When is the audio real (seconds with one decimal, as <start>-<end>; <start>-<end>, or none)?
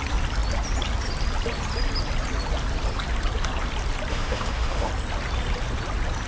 0.0-4.1; 4.9-6.3